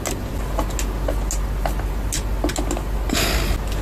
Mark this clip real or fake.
real